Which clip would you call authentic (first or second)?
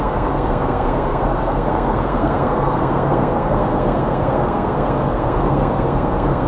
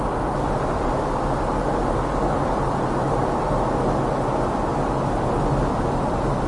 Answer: second